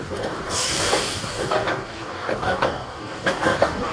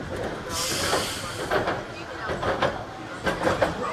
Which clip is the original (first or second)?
second